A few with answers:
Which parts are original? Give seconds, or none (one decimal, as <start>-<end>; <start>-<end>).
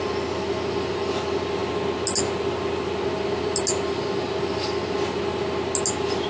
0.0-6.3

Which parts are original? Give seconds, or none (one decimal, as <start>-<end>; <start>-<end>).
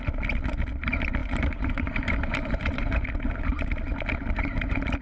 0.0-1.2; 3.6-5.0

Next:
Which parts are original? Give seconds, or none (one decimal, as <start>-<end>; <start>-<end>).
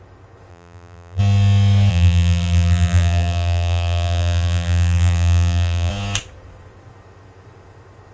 0.0-0.5; 1.2-1.9; 5.9-8.1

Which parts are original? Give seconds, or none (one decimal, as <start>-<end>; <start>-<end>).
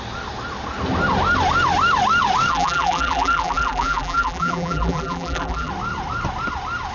0.0-2.5; 5.7-6.9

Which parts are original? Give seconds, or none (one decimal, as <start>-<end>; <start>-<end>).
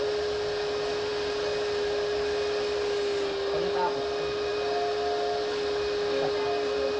0.0-7.0